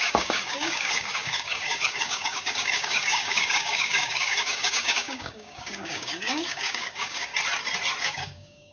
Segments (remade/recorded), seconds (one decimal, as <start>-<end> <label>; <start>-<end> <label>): 0.0-7.3 remade; 7.3-8.0 recorded; 8.0-8.7 remade